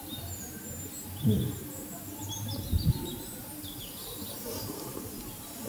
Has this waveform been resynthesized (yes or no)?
yes